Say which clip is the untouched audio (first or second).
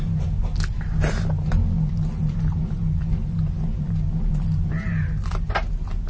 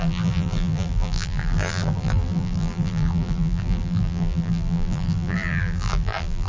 first